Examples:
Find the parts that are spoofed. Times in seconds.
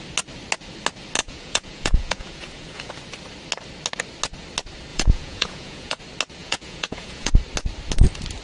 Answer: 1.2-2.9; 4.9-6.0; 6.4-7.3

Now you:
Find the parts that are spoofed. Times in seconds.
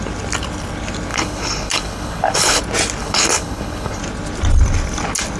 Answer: 1.1-2.6; 3.0-4.0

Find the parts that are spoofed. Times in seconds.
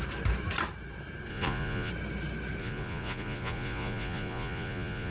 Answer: 1.3-1.9; 2.6-5.1